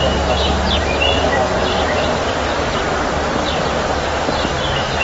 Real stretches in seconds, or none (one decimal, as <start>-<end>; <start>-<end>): 0.0-1.6; 4.2-5.0